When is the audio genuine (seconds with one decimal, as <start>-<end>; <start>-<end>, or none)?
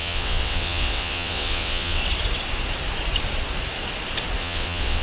2.0-4.4